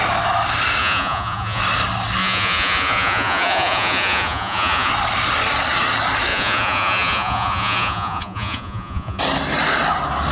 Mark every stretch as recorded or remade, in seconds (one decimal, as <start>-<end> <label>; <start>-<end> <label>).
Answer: 0.0-0.8 recorded; 0.8-1.6 remade; 1.6-2.2 recorded; 2.2-4.9 remade; 4.9-6.3 recorded; 6.3-9.2 remade; 9.2-10.3 recorded